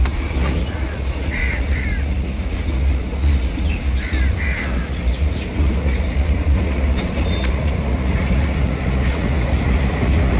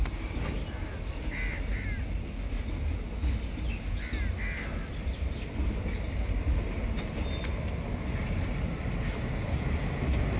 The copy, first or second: first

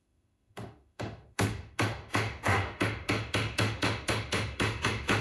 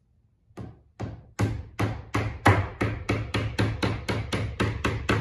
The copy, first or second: first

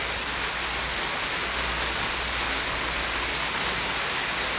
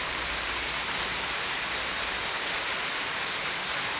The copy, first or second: second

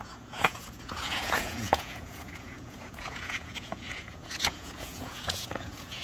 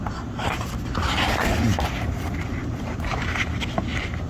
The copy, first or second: first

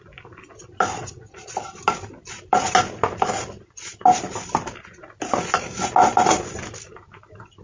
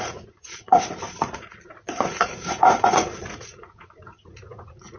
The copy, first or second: second